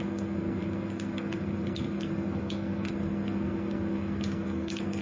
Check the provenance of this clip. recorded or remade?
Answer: remade